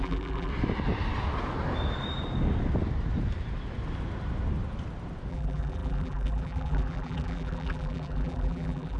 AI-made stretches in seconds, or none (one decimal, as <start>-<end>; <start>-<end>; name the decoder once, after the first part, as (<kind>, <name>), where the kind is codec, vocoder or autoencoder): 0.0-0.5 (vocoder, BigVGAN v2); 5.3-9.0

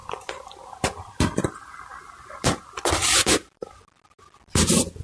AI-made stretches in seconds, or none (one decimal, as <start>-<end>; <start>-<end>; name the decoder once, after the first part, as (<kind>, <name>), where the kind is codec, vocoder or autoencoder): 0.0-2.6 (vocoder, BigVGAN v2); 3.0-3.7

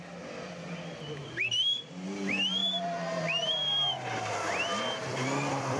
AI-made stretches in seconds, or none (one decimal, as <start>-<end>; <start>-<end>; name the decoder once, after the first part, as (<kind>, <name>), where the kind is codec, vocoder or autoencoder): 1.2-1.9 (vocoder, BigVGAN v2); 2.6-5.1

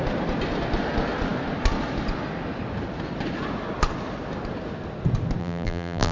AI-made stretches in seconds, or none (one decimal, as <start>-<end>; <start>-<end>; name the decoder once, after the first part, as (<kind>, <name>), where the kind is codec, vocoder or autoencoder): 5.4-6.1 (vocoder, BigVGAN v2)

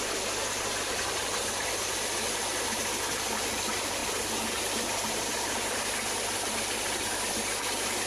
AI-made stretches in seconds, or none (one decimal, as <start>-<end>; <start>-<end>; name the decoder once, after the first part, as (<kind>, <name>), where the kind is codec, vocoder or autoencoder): 1.2-2.5 (vocoder, BigVGAN v2); 4.0-8.1

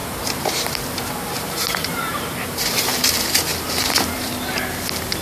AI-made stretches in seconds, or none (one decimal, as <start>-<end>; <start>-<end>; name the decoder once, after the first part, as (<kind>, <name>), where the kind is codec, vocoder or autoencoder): 0.0-3.1 (vocoder, BigVGAN v2); 3.5-4.3

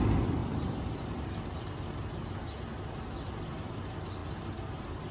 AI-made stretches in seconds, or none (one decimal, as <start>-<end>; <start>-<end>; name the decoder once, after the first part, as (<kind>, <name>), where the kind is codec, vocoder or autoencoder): 0.4-1.1 (vocoder, BigVGAN v2); 4.2-5.1

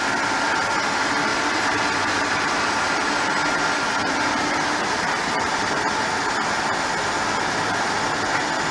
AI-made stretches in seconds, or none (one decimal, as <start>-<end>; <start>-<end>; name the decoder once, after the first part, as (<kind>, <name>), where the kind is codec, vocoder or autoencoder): 1.3-2.6 (vocoder, BigVGAN v2); 5.2-5.8